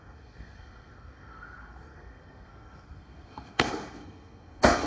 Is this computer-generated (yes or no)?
yes